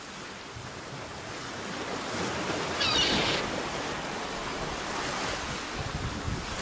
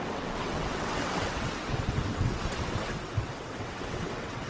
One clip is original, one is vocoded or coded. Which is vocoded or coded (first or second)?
second